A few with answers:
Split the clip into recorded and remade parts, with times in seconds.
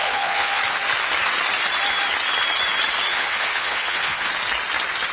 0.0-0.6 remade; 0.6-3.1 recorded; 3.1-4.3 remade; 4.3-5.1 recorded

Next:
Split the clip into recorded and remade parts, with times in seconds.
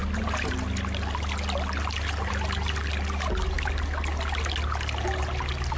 0.0-5.8 recorded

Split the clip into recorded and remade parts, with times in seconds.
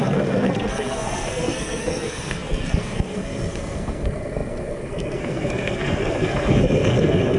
0.0-7.4 remade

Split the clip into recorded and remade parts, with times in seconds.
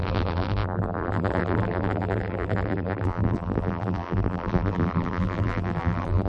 0.0-6.3 remade